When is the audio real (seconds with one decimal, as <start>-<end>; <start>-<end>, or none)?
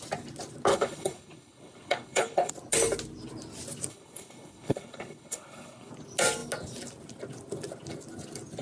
0.0-0.7; 2.5-3.9; 5.9-8.6